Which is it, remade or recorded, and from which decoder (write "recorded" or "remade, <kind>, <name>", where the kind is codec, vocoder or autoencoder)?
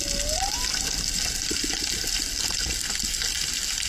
recorded